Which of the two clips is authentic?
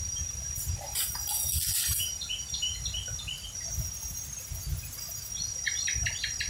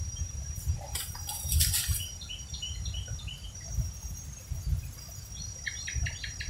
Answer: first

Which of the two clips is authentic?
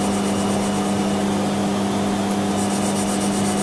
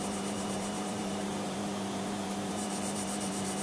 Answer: first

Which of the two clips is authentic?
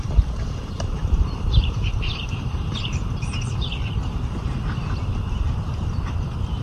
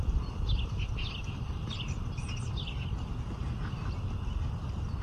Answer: second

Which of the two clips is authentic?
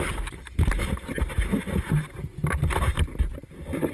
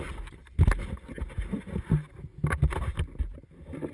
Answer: second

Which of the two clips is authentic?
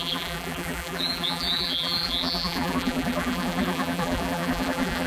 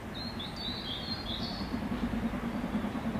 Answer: second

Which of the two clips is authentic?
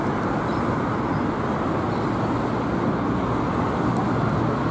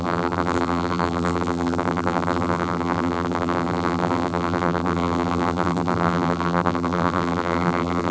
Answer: first